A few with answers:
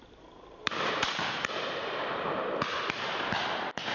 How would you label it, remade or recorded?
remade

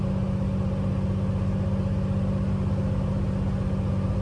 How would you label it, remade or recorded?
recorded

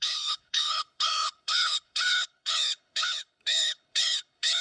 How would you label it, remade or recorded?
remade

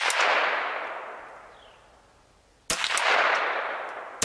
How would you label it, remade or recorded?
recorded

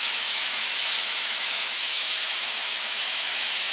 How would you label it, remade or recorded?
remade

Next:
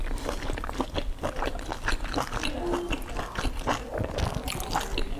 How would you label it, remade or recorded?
recorded